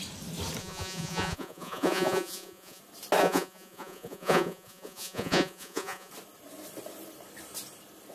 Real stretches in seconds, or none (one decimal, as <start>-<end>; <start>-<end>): 0.0-0.6; 2.8-3.2; 6.1-8.1